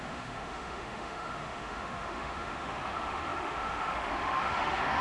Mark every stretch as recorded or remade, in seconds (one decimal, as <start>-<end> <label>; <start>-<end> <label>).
0.0-5.0 remade